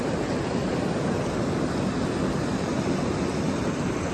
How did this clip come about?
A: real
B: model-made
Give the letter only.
A